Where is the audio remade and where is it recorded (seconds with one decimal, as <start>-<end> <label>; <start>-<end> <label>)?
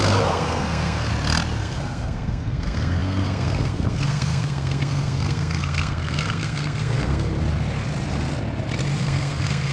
0.0-1.1 remade; 1.1-1.6 recorded; 1.6-7.3 remade; 7.3-9.0 recorded; 9.0-9.7 remade